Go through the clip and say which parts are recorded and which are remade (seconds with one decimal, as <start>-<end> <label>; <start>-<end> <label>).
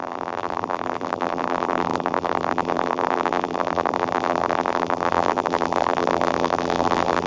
0.0-7.3 remade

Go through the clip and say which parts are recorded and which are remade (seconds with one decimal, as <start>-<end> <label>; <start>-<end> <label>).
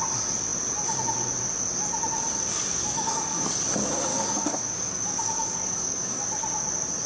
0.0-2.7 recorded; 2.7-3.5 remade; 3.5-4.1 recorded; 4.1-6.2 remade; 6.2-7.1 recorded